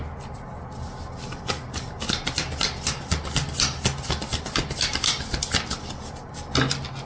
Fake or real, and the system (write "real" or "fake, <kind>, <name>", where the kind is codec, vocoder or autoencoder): real